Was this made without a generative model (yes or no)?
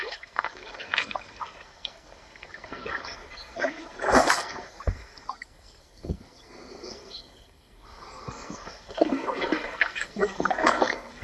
no